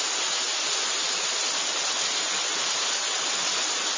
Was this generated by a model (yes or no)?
no